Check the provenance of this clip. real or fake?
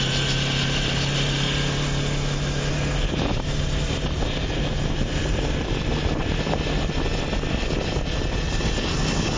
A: real